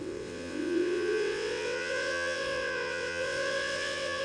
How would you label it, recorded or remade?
remade